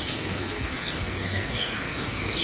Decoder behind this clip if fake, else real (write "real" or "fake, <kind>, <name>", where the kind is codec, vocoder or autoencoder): fake, codec, SNAC